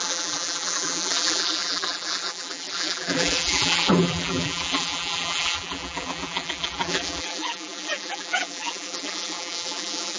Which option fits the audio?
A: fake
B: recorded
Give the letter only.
A